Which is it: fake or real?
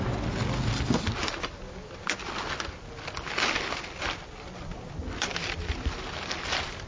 real